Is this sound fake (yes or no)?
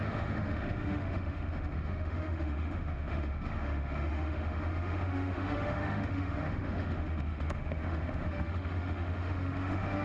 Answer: yes